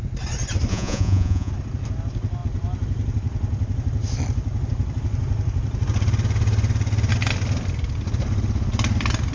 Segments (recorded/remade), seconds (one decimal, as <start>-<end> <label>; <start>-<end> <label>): 0.0-0.7 recorded; 0.7-1.5 remade; 1.5-9.3 recorded